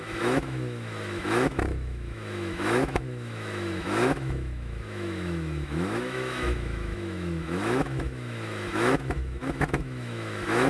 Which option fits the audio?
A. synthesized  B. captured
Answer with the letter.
A